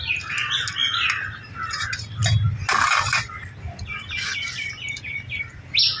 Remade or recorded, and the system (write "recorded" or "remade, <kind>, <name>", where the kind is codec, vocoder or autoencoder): recorded